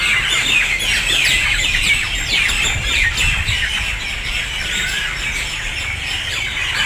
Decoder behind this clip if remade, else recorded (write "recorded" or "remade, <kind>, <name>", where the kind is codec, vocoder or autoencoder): recorded